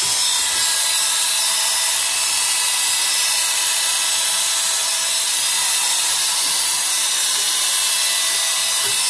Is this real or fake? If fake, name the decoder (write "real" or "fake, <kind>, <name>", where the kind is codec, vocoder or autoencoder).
real